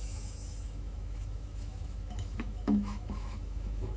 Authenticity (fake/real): fake